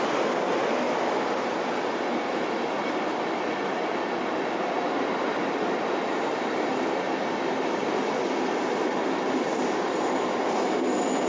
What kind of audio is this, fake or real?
real